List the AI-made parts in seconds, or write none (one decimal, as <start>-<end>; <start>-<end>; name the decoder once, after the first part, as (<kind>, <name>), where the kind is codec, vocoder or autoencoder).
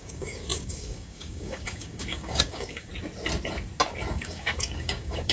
0.0-2.9 (codec, DAC); 4.1-5.3